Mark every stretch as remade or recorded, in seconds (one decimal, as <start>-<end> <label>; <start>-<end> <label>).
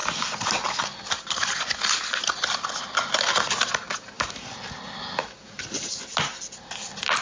0.0-7.2 recorded